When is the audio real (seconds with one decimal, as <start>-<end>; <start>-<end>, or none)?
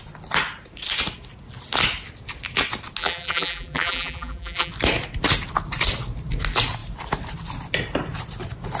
0.0-3.0; 4.7-8.8